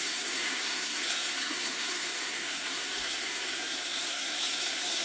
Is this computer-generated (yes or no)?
yes